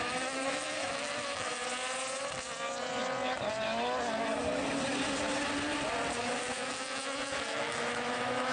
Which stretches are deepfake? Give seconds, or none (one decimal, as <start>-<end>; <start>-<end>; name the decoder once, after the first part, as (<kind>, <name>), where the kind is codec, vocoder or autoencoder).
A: 0.0-1.6 (autoencoder, DAC-VAE); 6.2-8.5